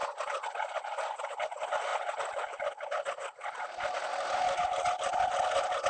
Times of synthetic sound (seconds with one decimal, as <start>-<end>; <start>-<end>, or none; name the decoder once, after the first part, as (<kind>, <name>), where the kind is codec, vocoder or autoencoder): none